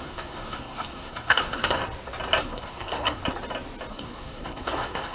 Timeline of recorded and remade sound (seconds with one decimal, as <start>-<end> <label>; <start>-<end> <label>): 0.0-1.8 remade; 1.8-2.4 recorded; 2.4-3.2 remade; 3.2-3.9 recorded; 3.9-5.1 remade